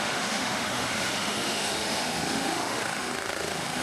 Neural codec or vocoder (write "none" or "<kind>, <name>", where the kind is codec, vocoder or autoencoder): autoencoder, DAC-VAE